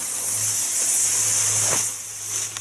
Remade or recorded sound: recorded